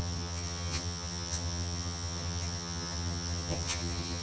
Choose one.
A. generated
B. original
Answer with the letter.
A